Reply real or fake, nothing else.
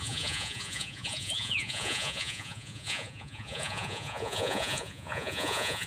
fake